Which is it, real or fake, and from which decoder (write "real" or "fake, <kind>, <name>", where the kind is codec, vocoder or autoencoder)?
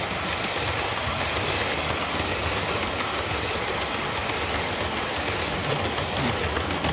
real